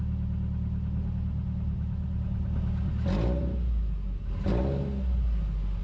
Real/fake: real